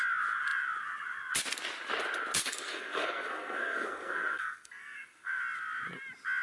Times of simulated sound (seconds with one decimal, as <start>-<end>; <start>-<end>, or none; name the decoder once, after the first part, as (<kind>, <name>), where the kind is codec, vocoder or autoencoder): 2.4-5.4 (codec, SNAC)